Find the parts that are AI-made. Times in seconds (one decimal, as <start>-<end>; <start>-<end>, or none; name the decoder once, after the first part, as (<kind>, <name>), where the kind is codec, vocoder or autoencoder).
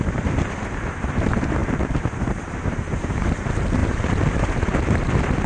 0.0-1.6 (vocoder, BigVGAN v2); 2.2-5.5